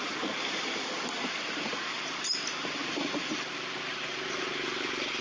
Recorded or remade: recorded